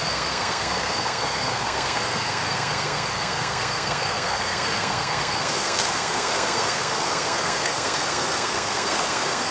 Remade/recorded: remade